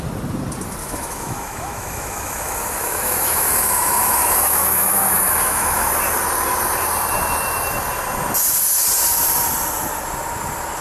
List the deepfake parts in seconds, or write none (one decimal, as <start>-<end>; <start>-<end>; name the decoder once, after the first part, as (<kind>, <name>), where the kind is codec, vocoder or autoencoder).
0.8-5.9 (autoencoder, DAC-VAE)